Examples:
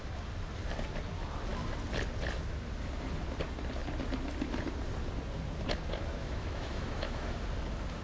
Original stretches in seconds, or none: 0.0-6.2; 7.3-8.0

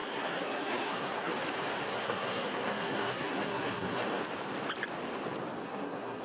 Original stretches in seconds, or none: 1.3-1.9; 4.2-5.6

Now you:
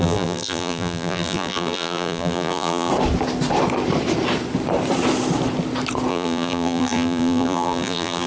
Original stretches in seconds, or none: 2.9-6.1

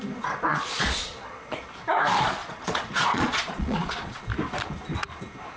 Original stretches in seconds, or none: 0.0-0.5; 1.5-2.4; 4.2-5.6